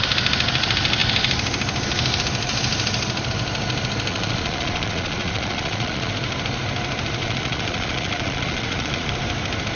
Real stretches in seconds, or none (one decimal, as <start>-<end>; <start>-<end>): 0.0-4.1; 6.1-7.2; 9.1-9.8